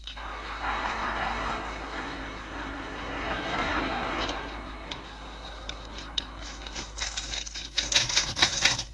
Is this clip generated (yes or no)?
yes